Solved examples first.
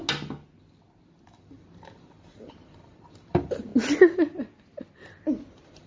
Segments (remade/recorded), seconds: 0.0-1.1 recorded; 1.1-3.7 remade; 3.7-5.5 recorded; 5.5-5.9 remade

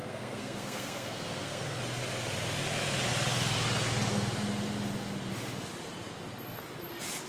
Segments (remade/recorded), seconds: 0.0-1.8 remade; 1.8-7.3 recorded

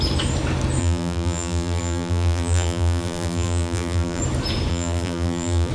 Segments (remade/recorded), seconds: 0.0-0.8 recorded; 0.8-4.2 remade; 4.2-4.7 recorded; 4.7-5.7 remade

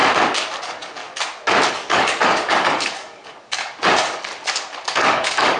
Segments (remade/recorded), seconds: 0.0-0.6 recorded; 0.6-1.0 remade; 1.0-1.7 recorded; 1.7-4.3 remade; 4.3-4.9 recorded; 4.9-5.6 remade

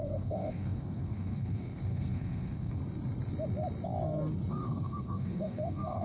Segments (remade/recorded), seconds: 0.0-2.8 remade; 2.8-4.5 recorded; 4.5-6.0 remade